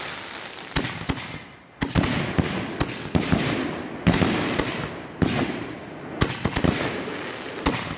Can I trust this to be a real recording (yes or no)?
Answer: yes